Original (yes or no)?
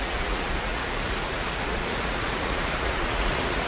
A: no